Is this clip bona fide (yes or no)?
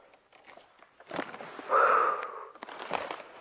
yes